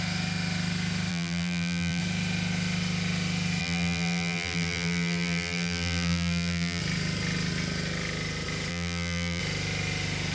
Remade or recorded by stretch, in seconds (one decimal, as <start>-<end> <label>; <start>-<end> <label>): 0.0-1.1 recorded; 1.1-2.0 remade; 2.0-3.6 recorded; 3.6-6.8 remade; 6.8-8.7 recorded; 8.7-9.4 remade; 9.4-10.3 recorded